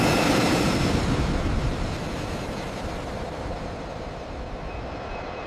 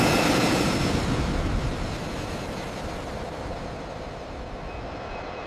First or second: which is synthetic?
first